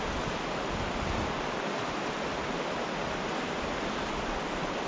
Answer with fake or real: real